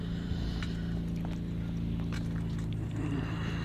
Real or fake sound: real